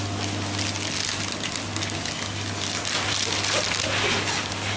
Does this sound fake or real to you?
real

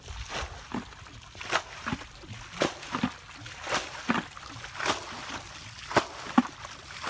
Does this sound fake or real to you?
real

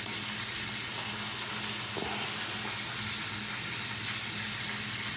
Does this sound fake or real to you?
real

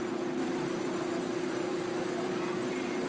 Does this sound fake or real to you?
fake